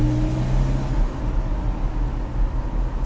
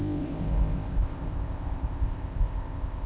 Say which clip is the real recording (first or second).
first